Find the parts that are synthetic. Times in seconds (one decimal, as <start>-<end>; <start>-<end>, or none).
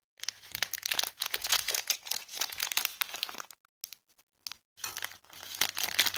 1.2-2.7